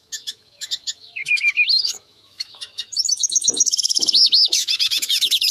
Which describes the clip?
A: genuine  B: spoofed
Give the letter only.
B